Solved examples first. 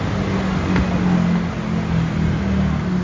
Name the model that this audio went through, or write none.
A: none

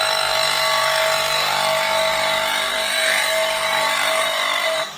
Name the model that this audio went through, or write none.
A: codec, DAC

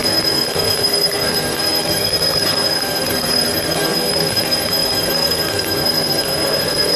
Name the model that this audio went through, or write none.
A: codec, SNAC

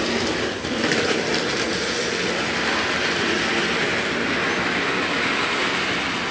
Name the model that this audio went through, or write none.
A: none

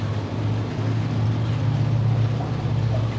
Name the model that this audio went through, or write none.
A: none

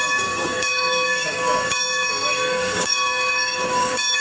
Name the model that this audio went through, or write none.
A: codec, DAC